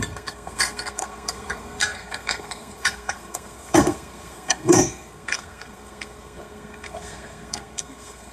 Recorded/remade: remade